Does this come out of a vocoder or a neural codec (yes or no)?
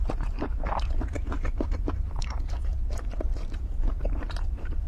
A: yes